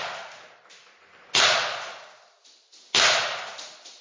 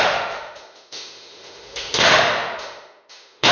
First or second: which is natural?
first